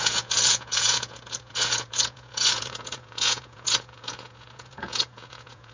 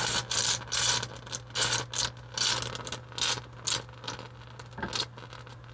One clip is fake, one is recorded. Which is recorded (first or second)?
second